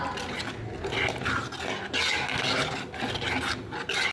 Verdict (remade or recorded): recorded